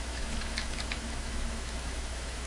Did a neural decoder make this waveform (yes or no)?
yes